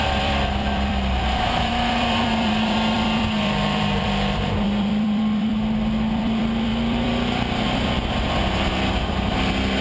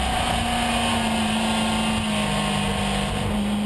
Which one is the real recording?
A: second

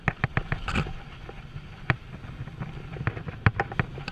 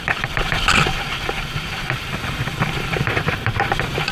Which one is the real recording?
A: first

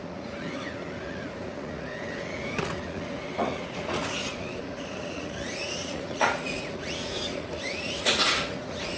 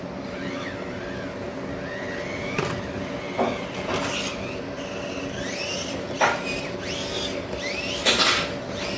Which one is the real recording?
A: second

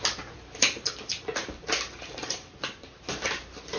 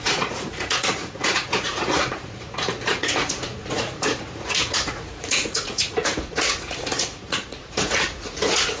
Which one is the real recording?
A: first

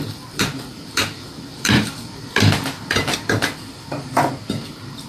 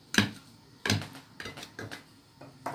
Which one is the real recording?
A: second